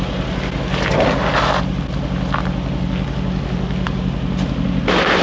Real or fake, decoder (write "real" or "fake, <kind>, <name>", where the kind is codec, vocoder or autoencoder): real